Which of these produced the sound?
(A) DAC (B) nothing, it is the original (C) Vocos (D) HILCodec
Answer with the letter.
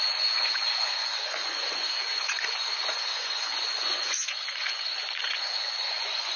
C